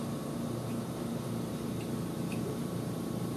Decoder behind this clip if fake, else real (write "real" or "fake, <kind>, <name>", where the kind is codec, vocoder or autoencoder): fake, vocoder, BigVGAN v2